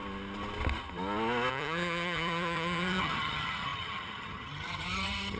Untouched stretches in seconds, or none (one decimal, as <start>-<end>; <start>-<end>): 0.0-1.5